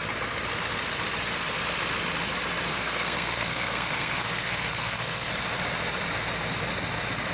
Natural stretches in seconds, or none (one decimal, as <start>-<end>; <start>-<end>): 0.0-2.7; 5.3-7.3